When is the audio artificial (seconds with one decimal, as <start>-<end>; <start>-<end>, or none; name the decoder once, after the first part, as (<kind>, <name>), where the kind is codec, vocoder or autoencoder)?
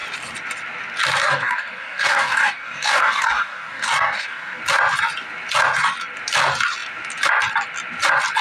1.2-4.6 (codec, DAC)